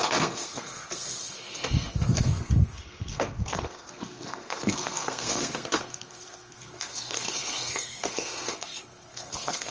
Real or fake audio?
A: fake